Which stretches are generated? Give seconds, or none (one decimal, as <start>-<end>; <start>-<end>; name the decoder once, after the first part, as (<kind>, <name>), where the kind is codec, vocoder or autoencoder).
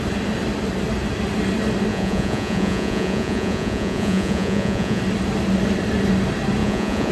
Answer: 1.9-5.0 (vocoder, Vocos); 6.6-7.1